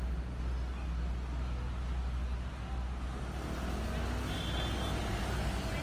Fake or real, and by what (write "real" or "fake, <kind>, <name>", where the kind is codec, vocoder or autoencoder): real